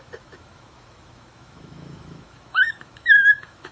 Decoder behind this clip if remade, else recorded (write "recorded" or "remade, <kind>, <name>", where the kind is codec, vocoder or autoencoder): remade, autoencoder, DAC-VAE